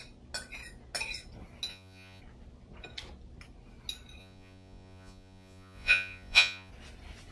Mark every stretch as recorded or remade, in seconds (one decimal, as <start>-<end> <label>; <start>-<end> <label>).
0.0-1.7 recorded; 1.7-2.2 remade; 2.2-4.2 recorded; 4.2-6.7 remade; 6.7-7.3 recorded